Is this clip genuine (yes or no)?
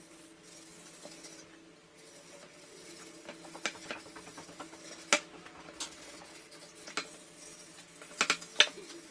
yes